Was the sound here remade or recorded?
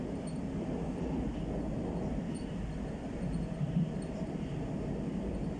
remade